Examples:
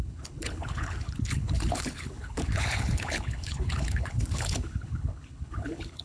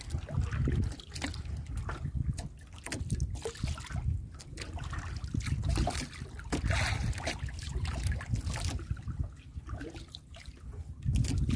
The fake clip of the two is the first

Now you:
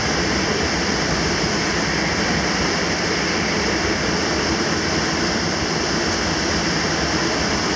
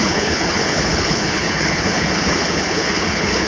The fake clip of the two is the second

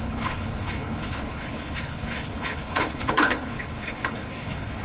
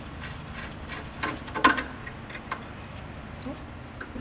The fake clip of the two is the first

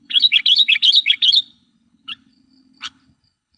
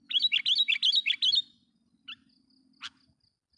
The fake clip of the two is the first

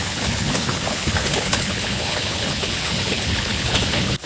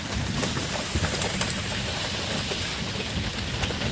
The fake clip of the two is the first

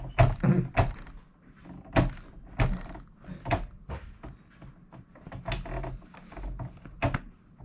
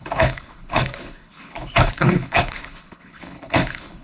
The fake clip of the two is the second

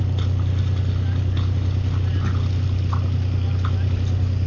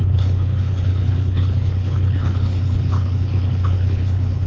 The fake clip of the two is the second